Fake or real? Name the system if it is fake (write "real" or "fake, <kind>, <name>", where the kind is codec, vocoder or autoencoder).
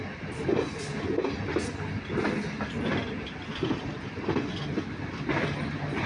real